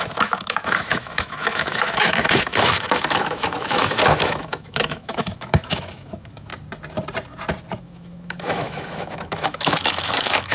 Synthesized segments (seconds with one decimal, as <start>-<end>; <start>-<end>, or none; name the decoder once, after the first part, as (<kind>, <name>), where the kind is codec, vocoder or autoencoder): 0.0-6.5 (autoencoder, DAC-VAE); 7.8-10.5